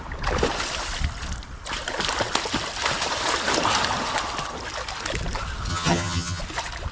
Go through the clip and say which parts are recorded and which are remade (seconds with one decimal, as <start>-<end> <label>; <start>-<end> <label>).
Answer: 0.0-5.7 recorded; 5.7-6.4 remade; 6.4-6.9 recorded